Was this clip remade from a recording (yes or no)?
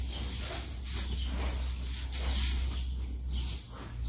no